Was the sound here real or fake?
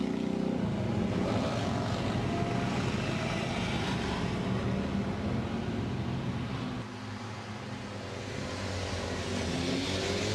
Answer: real